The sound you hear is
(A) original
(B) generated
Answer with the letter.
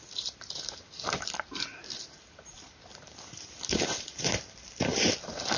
B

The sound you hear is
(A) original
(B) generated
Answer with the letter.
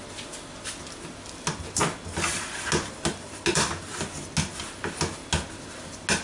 A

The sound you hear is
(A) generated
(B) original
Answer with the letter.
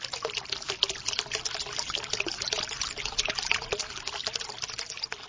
B